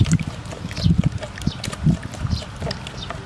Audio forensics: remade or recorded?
recorded